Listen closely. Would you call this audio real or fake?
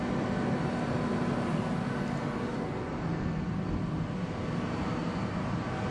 real